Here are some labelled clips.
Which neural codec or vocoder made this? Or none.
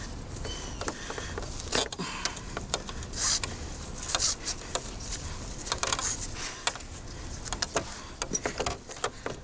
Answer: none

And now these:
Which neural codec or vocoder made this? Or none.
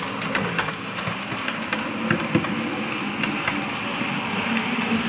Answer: none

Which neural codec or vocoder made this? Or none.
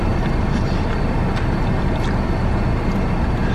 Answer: none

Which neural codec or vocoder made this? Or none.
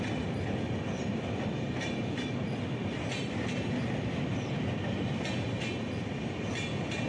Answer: none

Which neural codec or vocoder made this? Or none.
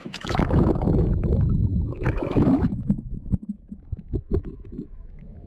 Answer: autoencoder, DAC-VAE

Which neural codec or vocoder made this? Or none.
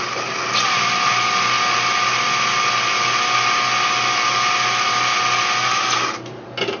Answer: none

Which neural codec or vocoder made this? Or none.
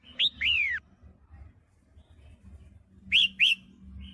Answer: none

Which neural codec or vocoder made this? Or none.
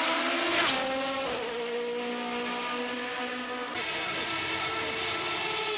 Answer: none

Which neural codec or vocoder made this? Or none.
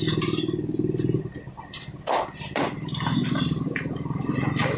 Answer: none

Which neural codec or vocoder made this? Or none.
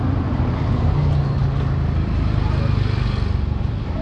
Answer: none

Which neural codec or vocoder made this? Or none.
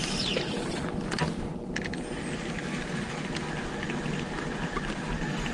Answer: none